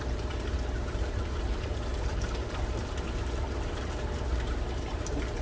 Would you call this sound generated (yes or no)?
yes